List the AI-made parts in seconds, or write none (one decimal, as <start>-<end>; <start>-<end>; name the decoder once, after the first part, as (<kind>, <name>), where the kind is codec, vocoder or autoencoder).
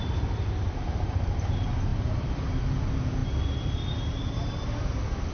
none